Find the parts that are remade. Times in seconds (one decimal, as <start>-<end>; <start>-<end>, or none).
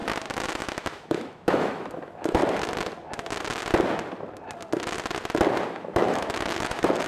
0.6-2.4; 5.7-7.1